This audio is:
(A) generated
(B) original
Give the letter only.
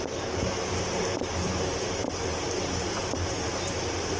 A